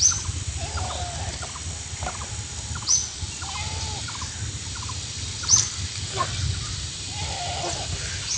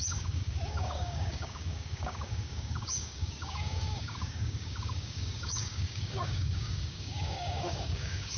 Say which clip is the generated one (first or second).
second